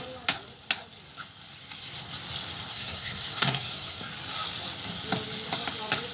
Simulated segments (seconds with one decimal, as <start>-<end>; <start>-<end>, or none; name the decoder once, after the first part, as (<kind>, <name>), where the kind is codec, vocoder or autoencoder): 2.7-4.1 (codec, SNAC)

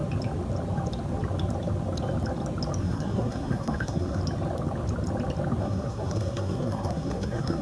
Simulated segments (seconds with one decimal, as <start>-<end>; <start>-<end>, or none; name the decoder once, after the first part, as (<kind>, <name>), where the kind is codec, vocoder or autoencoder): 2.8-4.2 (codec, SNAC); 5.6-7.6

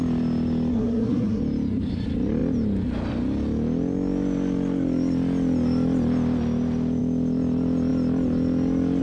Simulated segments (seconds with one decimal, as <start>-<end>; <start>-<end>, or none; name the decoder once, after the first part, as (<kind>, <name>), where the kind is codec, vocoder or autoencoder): 0.7-1.4 (codec, SNAC)

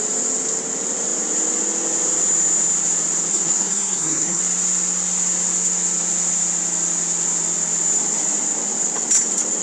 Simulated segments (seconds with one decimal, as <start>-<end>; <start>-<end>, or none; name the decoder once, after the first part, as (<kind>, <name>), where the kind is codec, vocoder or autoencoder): 3.3-4.4 (codec, SNAC)

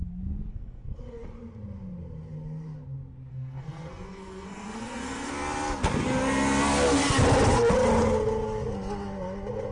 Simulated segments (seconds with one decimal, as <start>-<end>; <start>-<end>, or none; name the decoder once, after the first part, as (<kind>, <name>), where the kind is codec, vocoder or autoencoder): 0.5-1.0 (codec, SNAC); 3.3-5.3

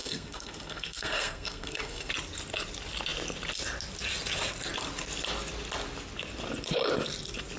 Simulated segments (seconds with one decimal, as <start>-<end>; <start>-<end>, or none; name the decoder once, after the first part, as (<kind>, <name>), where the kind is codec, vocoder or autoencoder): 0.0-2.1 (codec, SNAC)